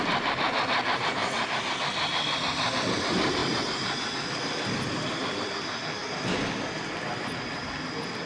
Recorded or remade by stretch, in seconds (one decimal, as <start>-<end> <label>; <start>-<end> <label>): 0.0-8.3 recorded

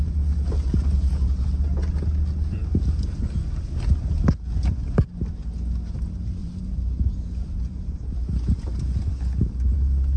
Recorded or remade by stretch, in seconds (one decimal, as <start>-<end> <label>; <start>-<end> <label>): 0.0-6.4 recorded; 6.4-8.1 remade; 8.1-10.2 recorded

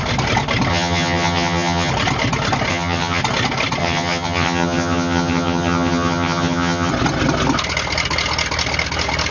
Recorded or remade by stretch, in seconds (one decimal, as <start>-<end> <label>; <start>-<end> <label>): 0.0-0.7 recorded; 0.7-1.9 remade; 1.9-2.7 recorded; 2.7-3.2 remade; 3.2-3.8 recorded; 3.8-6.9 remade; 6.9-9.3 recorded

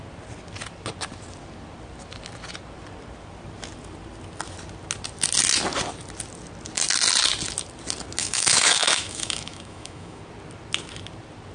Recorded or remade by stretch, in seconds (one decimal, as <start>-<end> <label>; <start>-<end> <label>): 0.0-8.2 recorded; 8.2-10.2 remade; 10.2-11.5 recorded

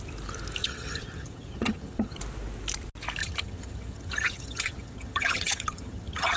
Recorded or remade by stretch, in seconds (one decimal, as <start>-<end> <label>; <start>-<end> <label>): 0.0-0.6 recorded; 0.6-2.2 remade; 2.2-3.2 recorded; 3.2-6.4 remade